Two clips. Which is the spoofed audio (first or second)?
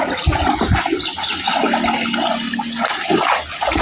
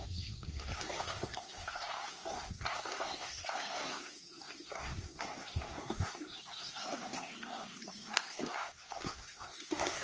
second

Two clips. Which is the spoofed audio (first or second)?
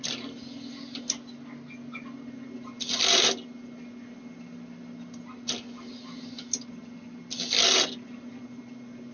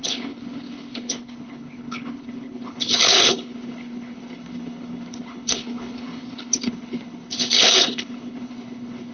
second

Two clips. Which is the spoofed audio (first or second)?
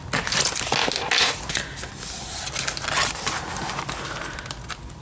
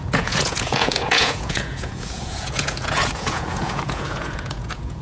second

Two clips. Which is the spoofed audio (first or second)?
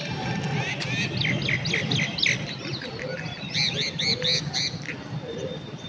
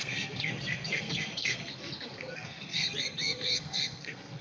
second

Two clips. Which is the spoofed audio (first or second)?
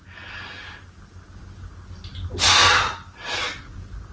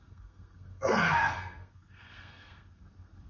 second